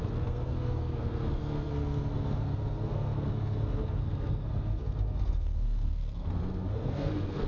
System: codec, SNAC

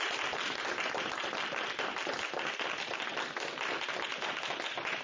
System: none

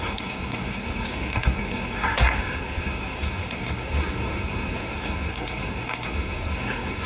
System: codec, SNAC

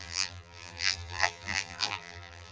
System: vocoder, BigVGAN v2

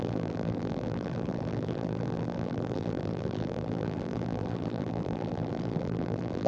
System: vocoder, BigVGAN v2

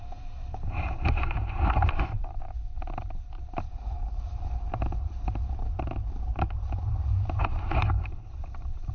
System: vocoder, BigVGAN v2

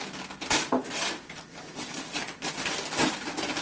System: none